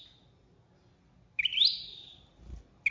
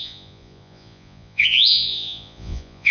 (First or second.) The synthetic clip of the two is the second